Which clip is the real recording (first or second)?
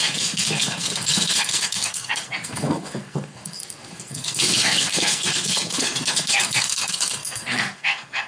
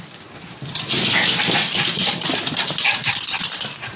second